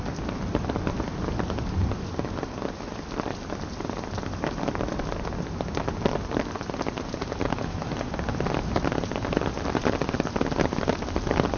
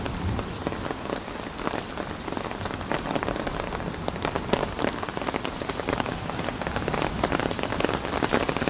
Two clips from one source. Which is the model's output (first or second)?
second